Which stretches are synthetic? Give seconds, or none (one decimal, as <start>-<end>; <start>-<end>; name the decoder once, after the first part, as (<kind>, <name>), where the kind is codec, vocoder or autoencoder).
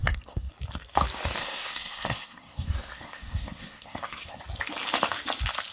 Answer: 0.0-0.5 (codec, SNAC); 1.4-4.4